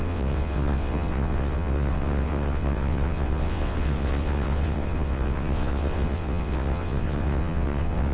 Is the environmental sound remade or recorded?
remade